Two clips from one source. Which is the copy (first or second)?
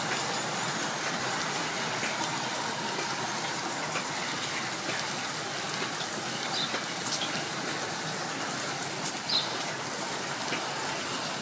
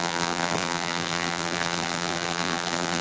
second